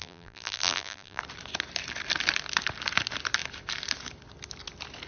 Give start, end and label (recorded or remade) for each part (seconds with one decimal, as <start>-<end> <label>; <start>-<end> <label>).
0.0-1.2 remade; 1.2-5.1 recorded